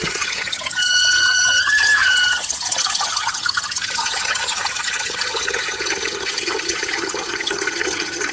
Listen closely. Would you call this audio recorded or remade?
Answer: remade